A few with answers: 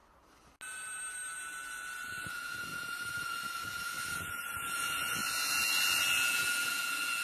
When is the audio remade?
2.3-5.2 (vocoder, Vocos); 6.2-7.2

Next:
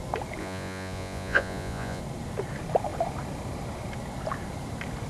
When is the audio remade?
0.4-2.0 (vocoder, Vocos)

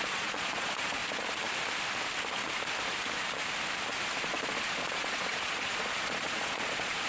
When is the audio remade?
0.0-1.0 (vocoder, Vocos); 4.2-7.1

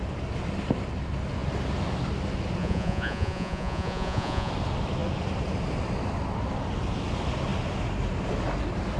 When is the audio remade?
2.6-4.5 (vocoder, Vocos)

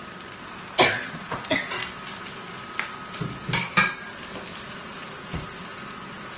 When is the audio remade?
1.1-1.8 (vocoder, Vocos); 4.7-5.6

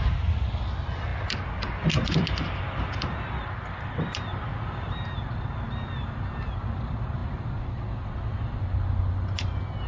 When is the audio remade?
none